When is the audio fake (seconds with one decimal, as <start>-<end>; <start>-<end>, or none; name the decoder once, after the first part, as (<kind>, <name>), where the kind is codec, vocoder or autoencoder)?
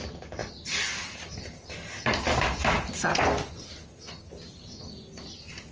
none